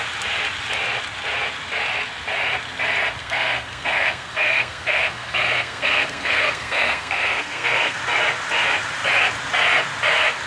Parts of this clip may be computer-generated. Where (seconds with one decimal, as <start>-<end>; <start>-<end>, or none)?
3.2-8.0